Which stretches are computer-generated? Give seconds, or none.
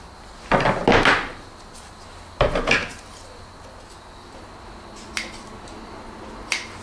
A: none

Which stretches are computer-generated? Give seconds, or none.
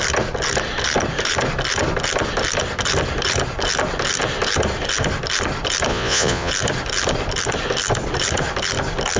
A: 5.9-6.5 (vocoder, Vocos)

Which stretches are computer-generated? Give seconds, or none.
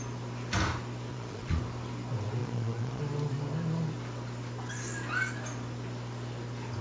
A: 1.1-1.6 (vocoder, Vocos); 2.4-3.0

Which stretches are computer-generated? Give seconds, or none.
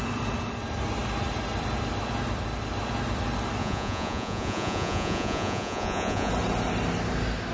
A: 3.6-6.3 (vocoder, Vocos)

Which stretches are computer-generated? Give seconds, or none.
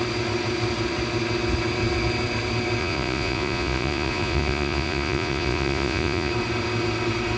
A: 2.8-6.3 (vocoder, Vocos)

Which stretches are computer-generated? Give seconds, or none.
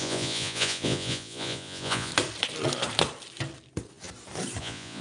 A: 0.0-2.1 (vocoder, Vocos); 4.6-5.0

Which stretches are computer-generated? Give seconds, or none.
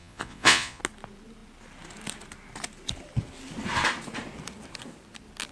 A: 0.0-0.8 (vocoder, Vocos)